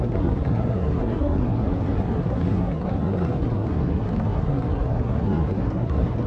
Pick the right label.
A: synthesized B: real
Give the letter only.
A